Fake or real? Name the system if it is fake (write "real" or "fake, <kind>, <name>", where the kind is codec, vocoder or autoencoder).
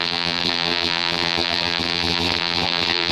fake, vocoder, BigVGAN v2